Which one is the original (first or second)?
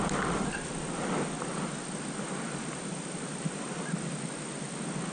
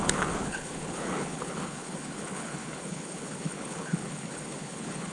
first